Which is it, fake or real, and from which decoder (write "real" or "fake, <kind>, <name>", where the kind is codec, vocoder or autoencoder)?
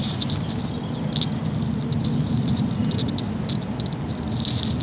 real